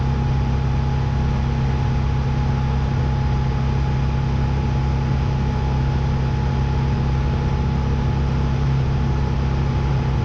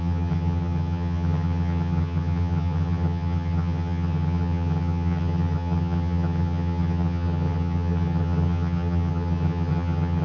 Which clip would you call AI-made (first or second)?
second